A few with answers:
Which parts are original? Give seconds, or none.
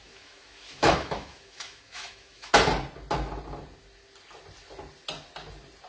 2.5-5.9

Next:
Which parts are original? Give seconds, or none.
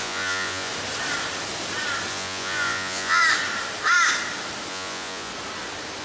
0.7-2.1; 3.2-4.7; 5.3-6.0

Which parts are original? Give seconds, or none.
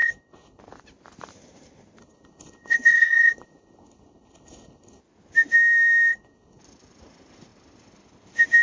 0.6-2.0; 5.0-6.1; 6.6-8.6